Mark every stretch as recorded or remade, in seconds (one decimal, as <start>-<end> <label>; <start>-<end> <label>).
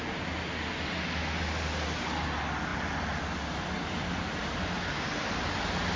0.0-6.0 recorded